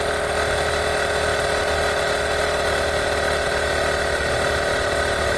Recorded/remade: recorded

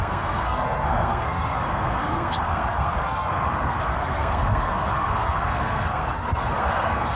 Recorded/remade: remade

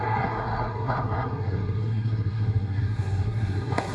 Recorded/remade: remade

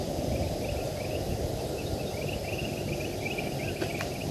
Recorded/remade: recorded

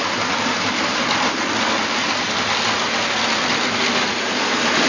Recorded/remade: recorded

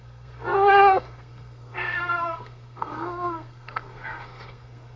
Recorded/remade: remade